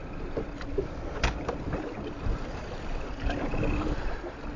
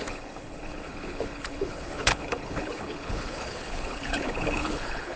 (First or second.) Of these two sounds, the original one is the first